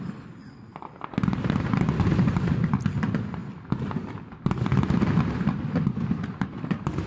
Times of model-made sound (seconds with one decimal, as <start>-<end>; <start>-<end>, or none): none